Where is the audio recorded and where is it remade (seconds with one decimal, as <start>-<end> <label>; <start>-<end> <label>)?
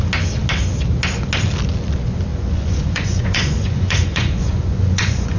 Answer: 0.0-2.3 recorded; 2.3-5.4 remade